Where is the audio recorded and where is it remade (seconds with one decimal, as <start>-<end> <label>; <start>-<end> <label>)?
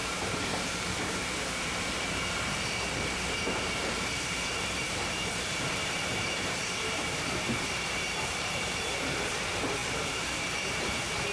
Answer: 0.0-11.3 remade